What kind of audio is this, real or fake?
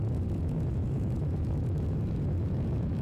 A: fake